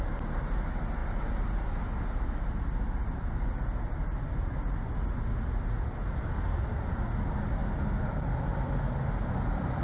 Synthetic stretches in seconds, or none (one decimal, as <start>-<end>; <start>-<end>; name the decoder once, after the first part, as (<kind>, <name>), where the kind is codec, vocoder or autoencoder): none